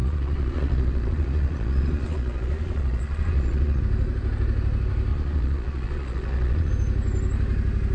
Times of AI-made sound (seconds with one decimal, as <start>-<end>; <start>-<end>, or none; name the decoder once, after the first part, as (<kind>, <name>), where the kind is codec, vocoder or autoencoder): 0.0-3.8 (vocoder, Vocos); 5.1-6.7